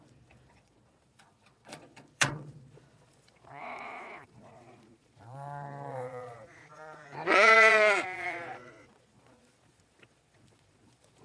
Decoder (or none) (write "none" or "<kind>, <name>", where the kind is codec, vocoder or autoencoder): vocoder, Vocos